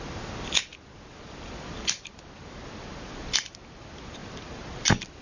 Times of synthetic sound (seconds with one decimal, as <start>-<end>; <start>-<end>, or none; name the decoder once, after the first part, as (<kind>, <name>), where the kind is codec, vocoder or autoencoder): none